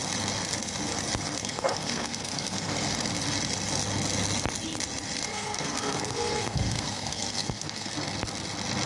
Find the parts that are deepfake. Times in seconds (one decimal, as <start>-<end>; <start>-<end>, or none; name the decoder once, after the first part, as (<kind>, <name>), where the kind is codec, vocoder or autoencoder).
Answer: 1.4-2.7 (codec, SNAC); 5.3-7.9